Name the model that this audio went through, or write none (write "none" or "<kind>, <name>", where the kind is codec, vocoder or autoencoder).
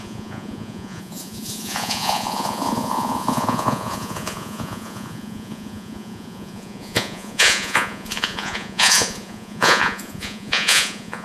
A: vocoder, Vocos